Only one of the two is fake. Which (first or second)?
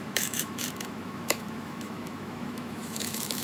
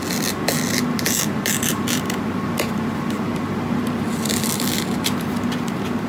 first